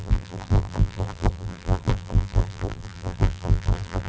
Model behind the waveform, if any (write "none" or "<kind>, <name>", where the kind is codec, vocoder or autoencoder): vocoder, BigVGAN v2